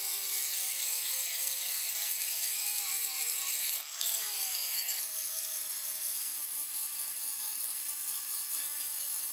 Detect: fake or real fake